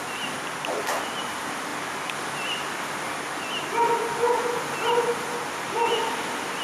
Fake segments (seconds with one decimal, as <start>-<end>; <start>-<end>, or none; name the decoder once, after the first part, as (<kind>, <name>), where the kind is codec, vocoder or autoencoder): none

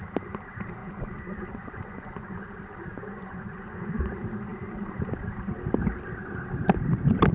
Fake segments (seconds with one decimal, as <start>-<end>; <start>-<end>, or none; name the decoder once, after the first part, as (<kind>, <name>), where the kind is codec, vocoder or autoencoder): 0.8-2.5 (vocoder, Vocos); 2.9-4.1

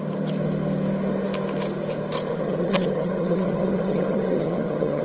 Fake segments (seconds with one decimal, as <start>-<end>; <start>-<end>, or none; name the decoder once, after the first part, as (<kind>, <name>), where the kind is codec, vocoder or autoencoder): 2.3-5.0 (vocoder, HiFi-GAN)

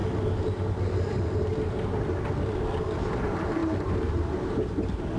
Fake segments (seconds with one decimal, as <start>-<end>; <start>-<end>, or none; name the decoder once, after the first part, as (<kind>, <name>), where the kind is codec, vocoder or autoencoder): 3.1-5.2 (vocoder, BigVGAN v2)